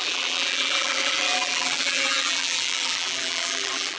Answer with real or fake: fake